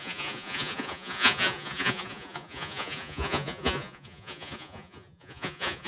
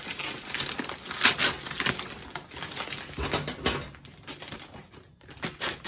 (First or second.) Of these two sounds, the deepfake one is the first